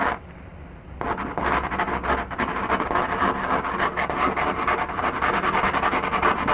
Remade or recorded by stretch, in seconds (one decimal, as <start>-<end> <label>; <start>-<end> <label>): 0.0-6.5 recorded